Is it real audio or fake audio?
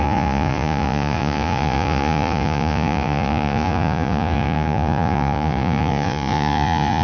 fake